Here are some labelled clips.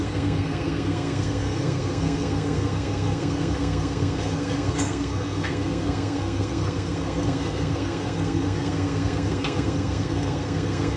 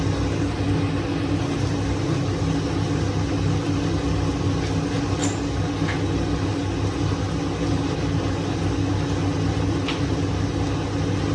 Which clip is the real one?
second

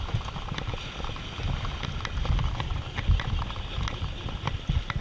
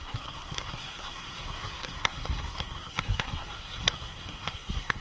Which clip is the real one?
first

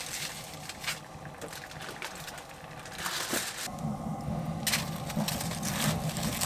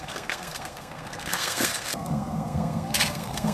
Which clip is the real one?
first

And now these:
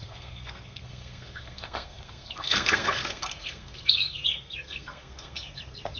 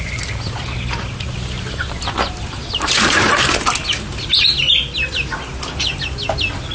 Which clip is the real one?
second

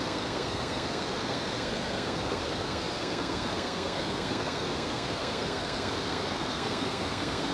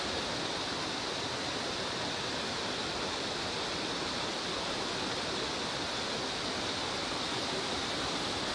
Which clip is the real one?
second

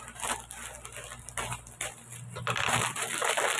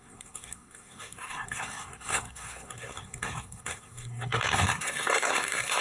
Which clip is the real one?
first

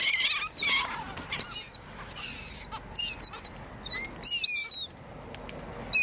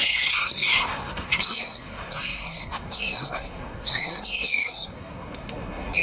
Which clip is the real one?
first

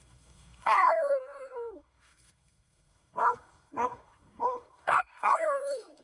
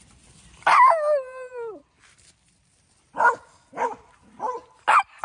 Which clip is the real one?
second